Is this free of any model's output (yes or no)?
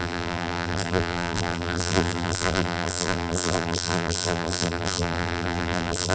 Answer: no